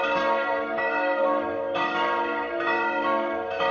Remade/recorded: remade